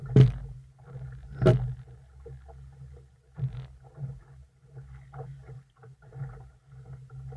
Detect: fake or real real